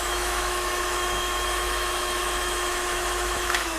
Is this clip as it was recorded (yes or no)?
no